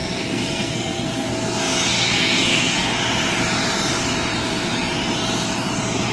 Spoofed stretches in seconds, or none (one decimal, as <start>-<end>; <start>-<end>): 0.0-2.9